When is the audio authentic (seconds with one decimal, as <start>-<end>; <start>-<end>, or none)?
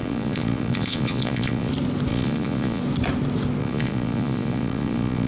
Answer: 1.7-2.1; 2.8-3.6